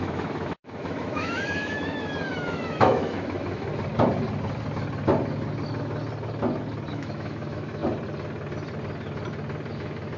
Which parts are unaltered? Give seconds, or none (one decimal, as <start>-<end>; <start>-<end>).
3.7-6.9; 7.8-9.7